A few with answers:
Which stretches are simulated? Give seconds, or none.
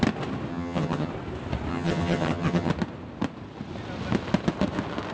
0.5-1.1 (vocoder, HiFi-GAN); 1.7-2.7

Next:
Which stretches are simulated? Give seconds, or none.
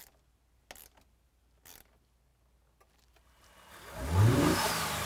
none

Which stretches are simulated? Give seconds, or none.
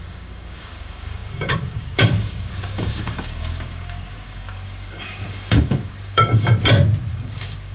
0.0-6.5 (codec, DAC); 7.1-7.7